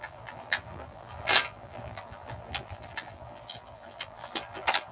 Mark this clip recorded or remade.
remade